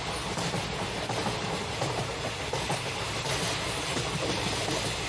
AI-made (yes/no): no